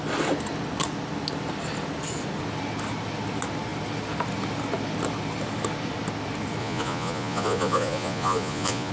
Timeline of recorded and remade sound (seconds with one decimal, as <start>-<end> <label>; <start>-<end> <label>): 0.0-6.6 recorded; 6.6-8.9 remade